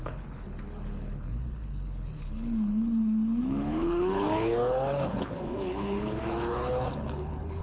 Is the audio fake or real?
fake